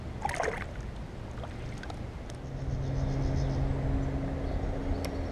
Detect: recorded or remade recorded